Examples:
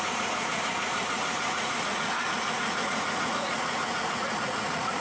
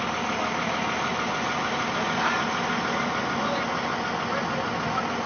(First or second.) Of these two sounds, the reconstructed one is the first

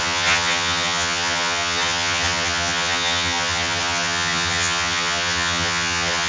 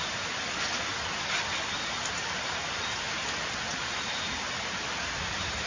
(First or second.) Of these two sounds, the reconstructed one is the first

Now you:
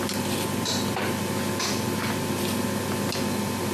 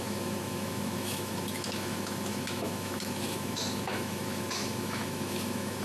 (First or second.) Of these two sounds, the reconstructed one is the second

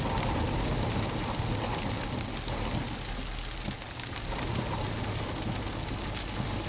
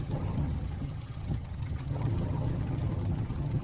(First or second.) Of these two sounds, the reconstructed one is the second